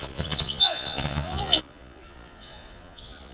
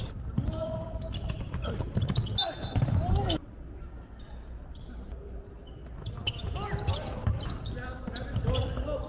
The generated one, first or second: first